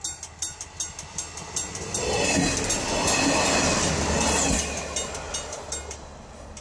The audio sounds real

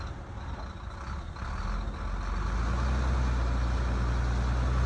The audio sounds real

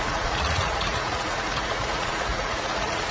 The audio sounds fake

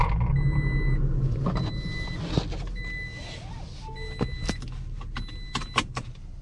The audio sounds real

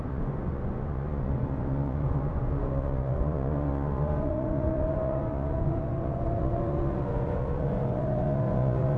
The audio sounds fake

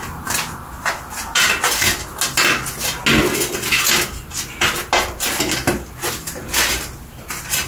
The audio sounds real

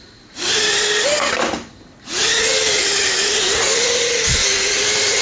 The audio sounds real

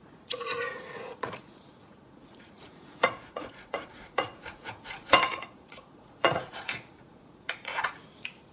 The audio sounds fake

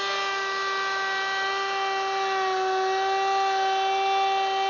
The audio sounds real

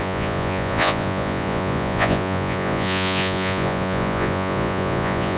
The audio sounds fake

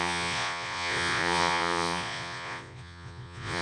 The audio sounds fake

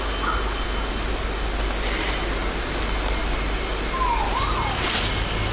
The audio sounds real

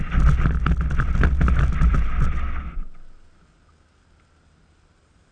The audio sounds real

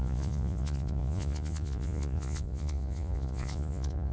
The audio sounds fake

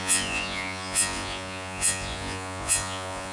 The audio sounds fake